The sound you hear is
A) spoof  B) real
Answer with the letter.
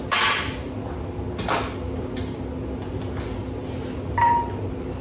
B